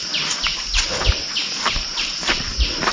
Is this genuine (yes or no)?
yes